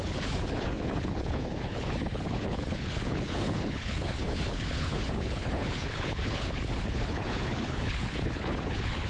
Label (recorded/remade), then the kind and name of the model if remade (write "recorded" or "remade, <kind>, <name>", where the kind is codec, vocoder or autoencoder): remade, codec, HILCodec